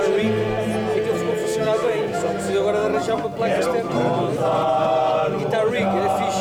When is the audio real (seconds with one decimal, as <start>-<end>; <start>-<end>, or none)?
0.0-1.4; 2.5-6.4